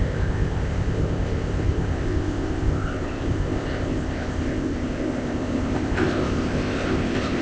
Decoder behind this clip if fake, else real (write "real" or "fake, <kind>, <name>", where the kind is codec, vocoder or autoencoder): fake, codec, ZipCodec